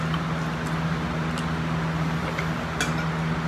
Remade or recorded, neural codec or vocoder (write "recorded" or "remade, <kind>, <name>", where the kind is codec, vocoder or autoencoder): recorded